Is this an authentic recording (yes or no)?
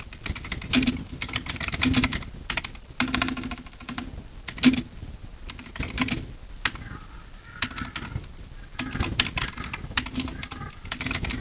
yes